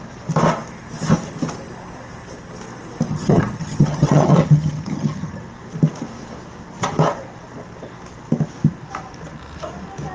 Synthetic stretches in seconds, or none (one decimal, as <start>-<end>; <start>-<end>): 3.1-5.4